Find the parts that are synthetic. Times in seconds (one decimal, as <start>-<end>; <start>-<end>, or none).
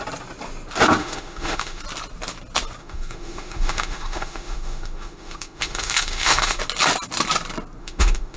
1.0-1.8; 2.8-6.6; 7.8-8.4